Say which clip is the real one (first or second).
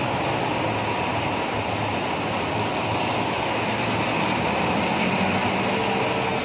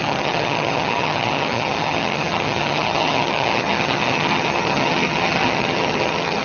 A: first